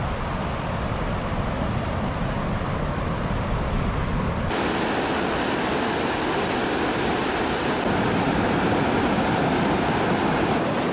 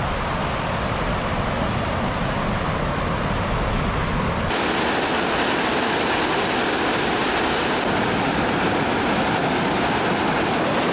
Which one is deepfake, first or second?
first